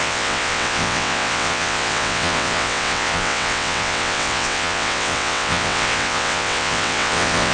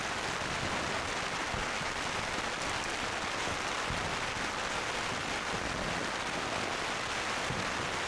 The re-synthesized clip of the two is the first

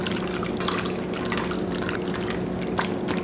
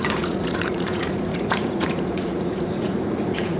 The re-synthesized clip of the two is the second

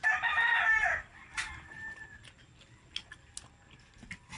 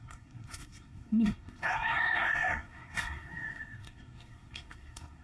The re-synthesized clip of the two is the second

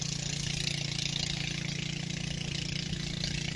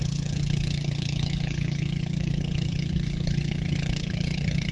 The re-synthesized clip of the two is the second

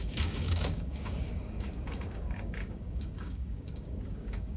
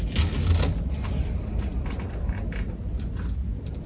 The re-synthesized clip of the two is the first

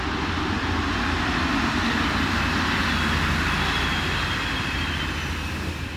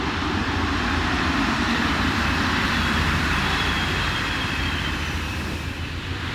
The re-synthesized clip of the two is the second